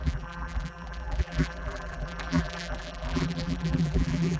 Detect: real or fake fake